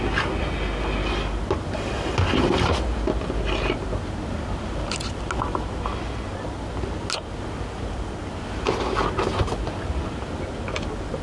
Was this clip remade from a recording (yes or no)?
no